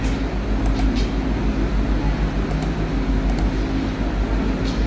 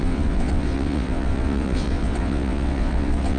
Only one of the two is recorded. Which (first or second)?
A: first